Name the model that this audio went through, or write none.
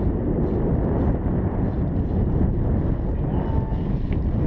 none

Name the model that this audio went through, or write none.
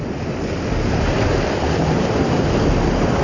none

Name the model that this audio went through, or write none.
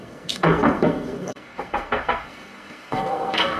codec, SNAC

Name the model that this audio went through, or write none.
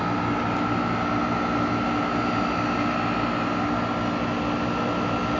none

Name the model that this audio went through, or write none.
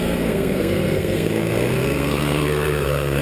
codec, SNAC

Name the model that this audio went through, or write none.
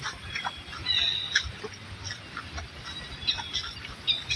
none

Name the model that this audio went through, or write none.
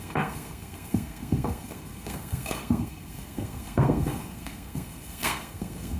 codec, SNAC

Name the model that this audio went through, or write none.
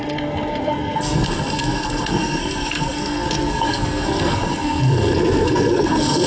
codec, SNAC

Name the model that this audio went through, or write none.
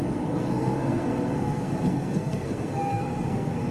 codec, SNAC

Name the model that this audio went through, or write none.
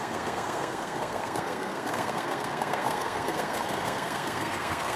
codec, SNAC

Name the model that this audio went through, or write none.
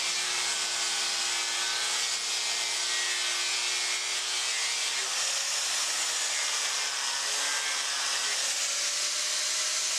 none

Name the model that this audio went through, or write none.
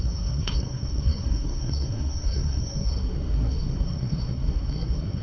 codec, SNAC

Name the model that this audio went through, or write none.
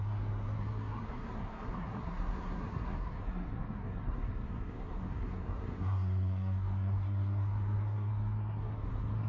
codec, SNAC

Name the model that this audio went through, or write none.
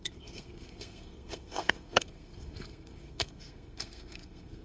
codec, SNAC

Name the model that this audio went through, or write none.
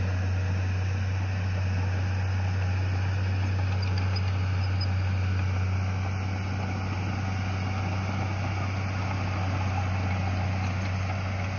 none